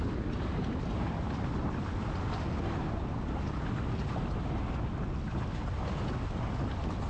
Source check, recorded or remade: recorded